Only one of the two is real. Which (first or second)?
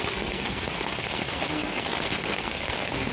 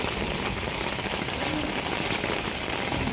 second